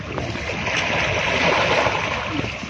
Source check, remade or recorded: recorded